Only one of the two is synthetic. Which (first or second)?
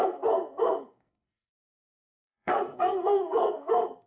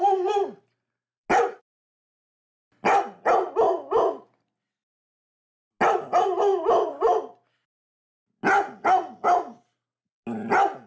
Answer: first